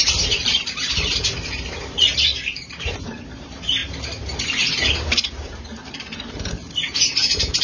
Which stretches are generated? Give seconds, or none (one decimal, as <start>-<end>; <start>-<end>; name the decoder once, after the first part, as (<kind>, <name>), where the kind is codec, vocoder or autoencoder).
0.0-7.6 (vocoder, BigVGAN v2)